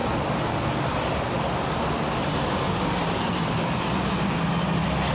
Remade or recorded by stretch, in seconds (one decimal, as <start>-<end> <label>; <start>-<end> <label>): 0.0-5.1 recorded